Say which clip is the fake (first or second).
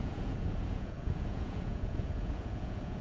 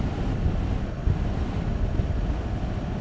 first